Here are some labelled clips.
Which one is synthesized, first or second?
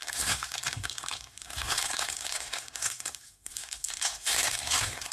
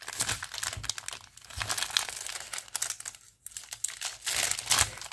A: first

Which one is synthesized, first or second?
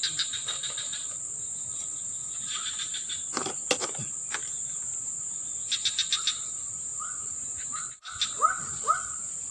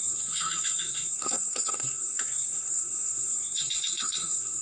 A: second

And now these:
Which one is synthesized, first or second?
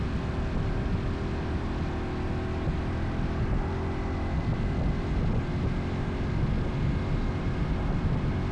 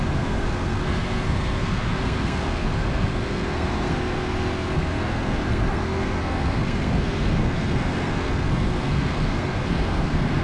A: second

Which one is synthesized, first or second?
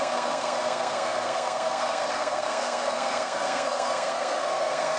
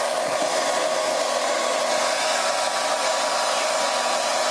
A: first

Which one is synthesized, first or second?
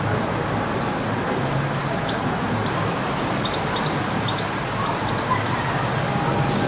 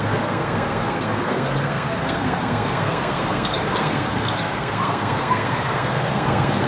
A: second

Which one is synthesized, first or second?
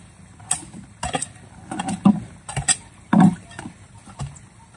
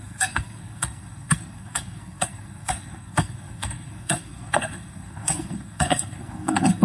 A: second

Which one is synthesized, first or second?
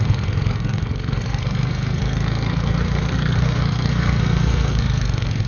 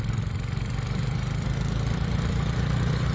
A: first